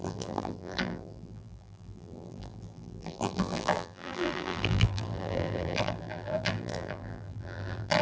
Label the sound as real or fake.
fake